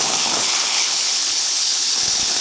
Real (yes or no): no